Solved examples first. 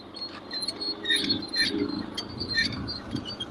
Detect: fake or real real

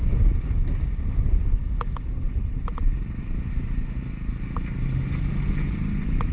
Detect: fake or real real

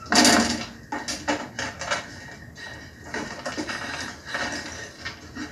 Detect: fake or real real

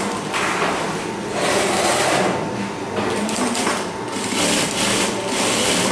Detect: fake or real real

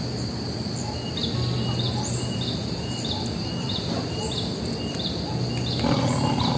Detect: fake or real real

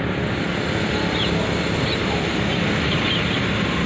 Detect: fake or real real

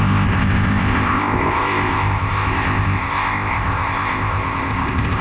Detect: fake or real fake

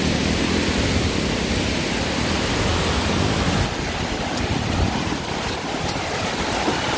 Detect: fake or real real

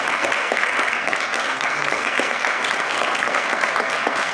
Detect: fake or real fake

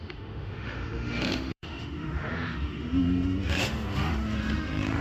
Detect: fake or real fake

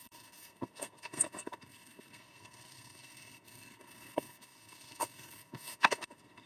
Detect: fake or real fake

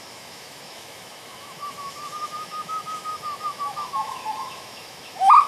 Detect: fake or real fake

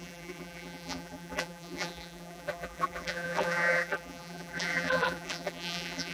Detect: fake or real fake